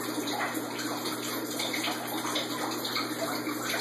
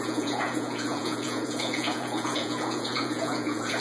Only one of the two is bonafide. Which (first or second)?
first